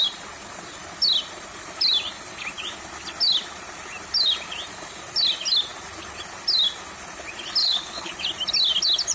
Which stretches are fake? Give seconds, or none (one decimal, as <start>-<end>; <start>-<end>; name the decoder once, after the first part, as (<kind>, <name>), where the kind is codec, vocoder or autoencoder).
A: 7.6-8.1 (codec, HILCodec)